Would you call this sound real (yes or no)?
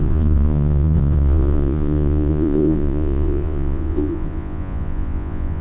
no